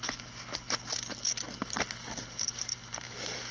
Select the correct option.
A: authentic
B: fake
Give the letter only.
A